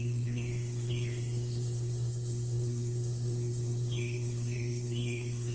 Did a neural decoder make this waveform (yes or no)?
yes